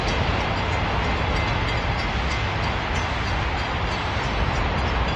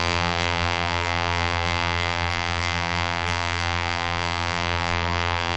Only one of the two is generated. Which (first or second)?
second